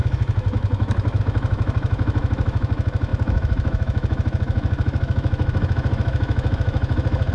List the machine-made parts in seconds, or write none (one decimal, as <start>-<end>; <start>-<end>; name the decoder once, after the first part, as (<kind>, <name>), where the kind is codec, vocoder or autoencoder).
0.0-7.3 (autoencoder, DAC-VAE)